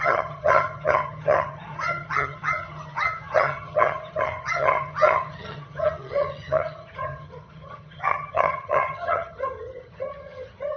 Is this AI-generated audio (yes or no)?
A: yes